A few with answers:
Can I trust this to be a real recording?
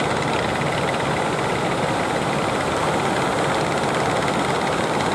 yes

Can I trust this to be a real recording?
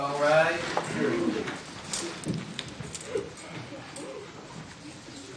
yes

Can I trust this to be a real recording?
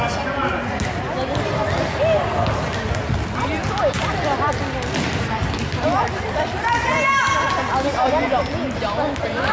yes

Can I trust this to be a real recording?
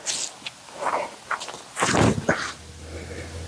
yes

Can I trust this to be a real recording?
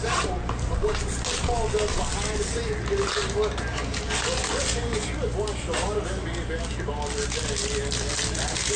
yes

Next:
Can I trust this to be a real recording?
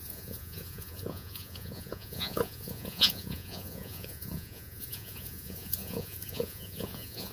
no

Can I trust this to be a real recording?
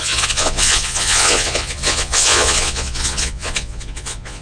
no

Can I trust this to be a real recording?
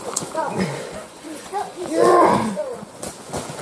no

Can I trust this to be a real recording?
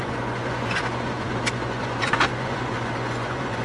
no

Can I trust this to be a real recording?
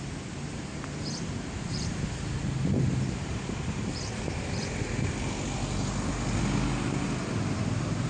yes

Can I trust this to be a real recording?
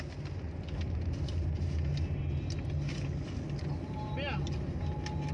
yes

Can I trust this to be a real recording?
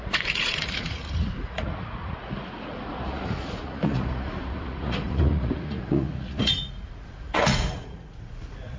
no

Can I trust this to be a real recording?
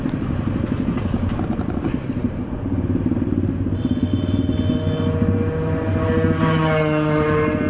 yes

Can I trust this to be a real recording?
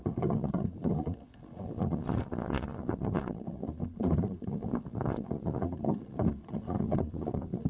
no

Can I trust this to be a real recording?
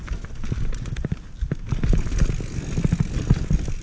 yes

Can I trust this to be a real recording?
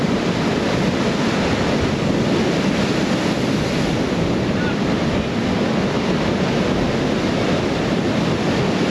yes